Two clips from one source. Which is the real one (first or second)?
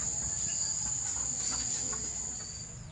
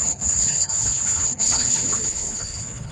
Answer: first